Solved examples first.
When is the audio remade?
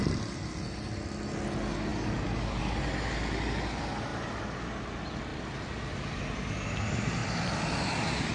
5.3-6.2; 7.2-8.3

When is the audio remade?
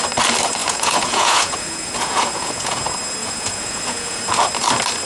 0.6-2.8; 3.2-4.2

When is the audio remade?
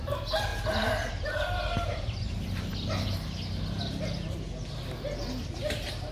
0.0-0.5; 1.1-2.7; 5.5-6.1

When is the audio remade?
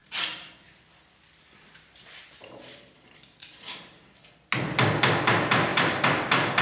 0.0-3.7; 5.7-6.6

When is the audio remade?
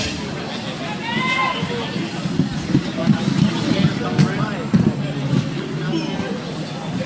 none